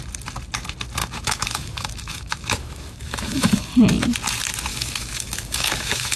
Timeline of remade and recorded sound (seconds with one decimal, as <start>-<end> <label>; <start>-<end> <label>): 0.0-1.0 recorded; 1.0-3.7 remade; 3.7-4.7 recorded; 4.7-6.2 remade